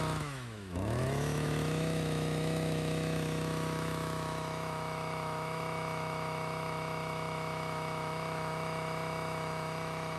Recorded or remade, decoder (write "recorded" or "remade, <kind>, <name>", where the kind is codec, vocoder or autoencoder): remade, autoencoder, DAC-VAE